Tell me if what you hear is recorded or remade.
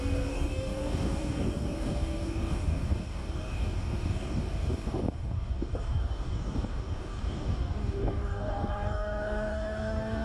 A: remade